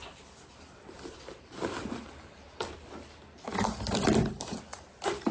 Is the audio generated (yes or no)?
yes